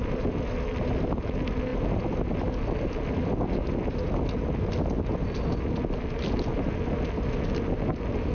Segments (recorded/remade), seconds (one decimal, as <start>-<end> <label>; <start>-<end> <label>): 0.0-8.3 recorded